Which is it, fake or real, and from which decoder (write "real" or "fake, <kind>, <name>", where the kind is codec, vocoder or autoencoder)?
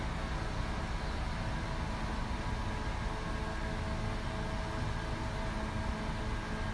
real